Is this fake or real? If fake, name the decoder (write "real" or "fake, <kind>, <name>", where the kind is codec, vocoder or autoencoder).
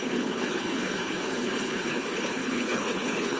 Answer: fake, codec, HILCodec